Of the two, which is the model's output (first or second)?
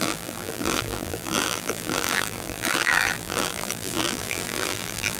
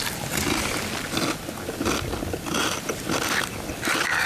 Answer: first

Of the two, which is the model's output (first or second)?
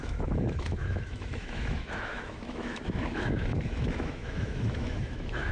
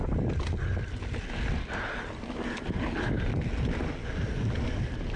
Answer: first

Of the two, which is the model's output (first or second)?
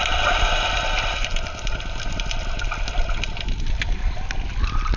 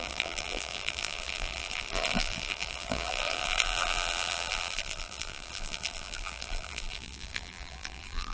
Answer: second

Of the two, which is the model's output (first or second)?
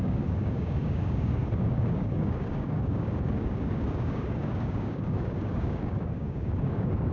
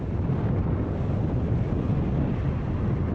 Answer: first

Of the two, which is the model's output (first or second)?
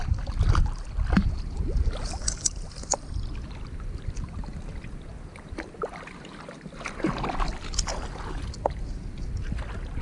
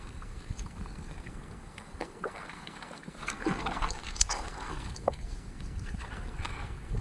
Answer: second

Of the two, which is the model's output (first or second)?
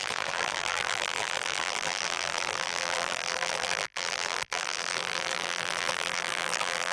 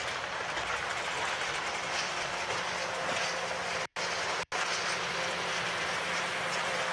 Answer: first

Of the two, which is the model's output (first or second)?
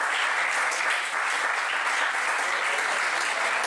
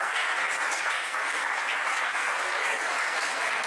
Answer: second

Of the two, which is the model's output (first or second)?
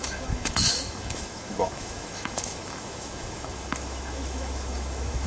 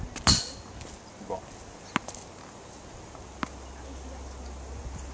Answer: first